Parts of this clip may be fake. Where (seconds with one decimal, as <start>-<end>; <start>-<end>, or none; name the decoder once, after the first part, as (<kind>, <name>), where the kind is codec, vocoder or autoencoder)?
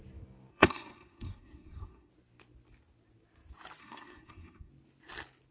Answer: 0.5-2.1 (codec, SNAC); 3.8-4.7